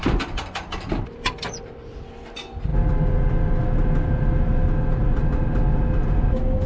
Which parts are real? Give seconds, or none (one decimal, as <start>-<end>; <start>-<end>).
0.0-6.7